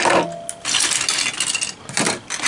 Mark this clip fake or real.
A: real